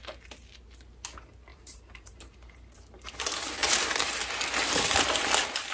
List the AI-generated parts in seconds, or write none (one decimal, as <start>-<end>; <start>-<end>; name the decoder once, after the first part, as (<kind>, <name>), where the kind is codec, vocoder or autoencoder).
1.5-2.1 (vocoder, BigVGAN v2)